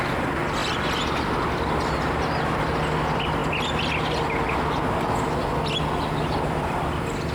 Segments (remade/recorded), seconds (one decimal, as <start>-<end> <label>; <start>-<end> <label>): 0.0-7.3 recorded